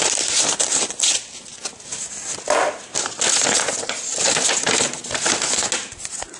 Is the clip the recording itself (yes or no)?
yes